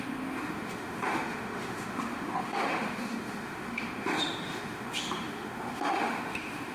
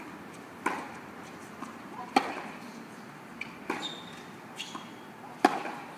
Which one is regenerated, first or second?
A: first